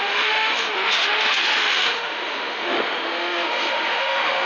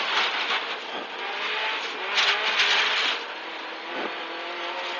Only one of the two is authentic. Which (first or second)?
second